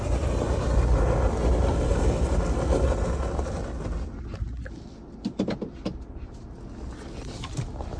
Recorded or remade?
recorded